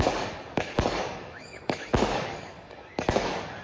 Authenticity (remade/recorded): remade